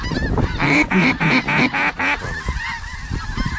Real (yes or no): yes